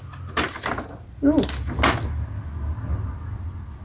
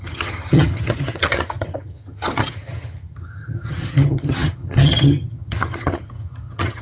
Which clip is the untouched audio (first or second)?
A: first